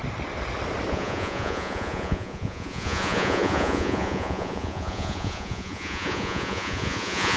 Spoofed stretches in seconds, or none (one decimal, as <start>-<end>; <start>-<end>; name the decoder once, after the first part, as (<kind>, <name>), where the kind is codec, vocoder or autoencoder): 0.9-7.4 (vocoder, Vocos)